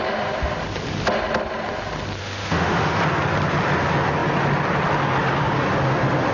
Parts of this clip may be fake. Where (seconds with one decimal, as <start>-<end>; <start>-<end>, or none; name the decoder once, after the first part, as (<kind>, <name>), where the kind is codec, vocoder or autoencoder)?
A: 2.2-3.0 (autoencoder, DAC-VAE)